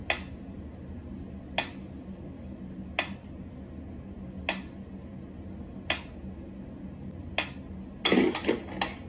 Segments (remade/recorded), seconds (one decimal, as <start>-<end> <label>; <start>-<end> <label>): 0.0-9.1 recorded